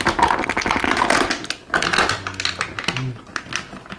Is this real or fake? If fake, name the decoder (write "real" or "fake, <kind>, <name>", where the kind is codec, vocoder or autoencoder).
real